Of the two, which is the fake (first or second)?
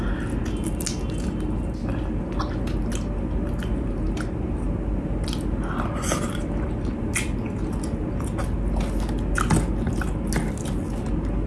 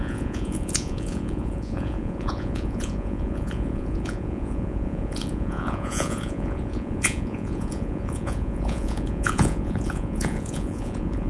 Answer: second